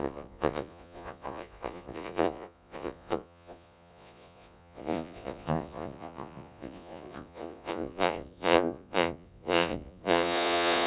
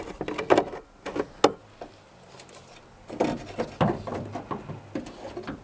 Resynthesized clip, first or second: first